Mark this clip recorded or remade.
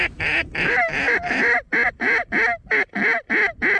recorded